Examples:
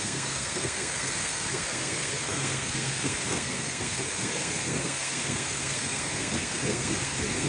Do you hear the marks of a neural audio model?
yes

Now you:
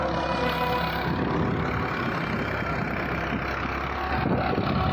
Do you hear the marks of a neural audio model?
no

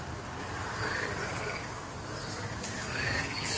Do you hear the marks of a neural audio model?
no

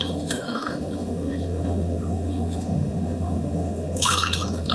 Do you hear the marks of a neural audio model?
yes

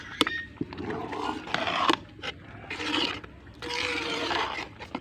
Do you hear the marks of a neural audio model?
no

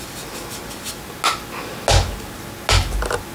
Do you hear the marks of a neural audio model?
no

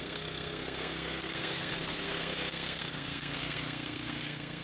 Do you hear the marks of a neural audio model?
yes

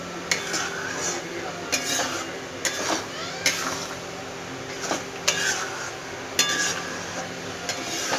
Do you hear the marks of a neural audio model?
no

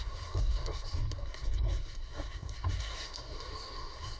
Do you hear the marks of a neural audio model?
yes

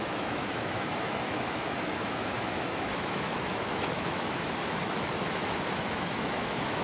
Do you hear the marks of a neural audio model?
yes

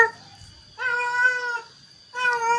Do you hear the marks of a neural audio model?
no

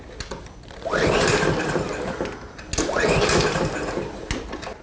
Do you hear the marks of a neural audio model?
no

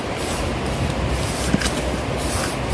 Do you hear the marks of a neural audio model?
no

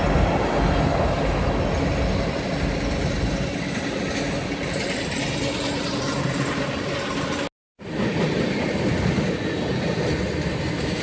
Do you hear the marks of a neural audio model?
no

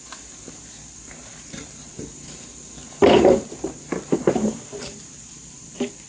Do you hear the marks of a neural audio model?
yes